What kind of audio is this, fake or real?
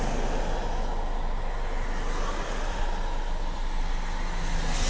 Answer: real